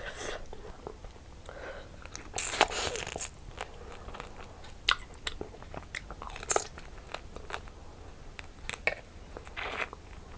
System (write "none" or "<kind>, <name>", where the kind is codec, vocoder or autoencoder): none